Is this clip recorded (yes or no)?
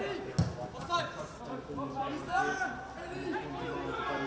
yes